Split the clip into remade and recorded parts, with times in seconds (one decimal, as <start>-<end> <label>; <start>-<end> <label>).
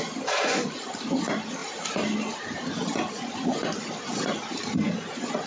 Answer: 0.0-1.6 recorded; 1.6-4.9 remade; 4.9-5.5 recorded